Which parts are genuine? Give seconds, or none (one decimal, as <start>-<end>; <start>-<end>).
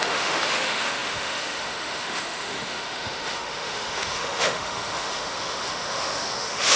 none